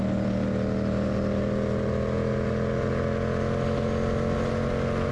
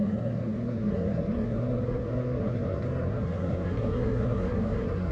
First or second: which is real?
first